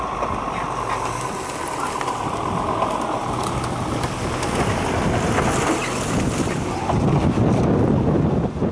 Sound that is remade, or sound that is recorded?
recorded